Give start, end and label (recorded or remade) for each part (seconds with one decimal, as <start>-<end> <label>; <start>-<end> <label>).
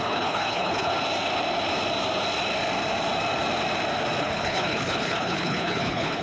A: 0.0-0.9 remade; 0.9-4.2 recorded; 4.2-6.2 remade